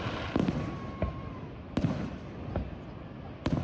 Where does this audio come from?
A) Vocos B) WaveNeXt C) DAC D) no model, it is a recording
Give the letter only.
D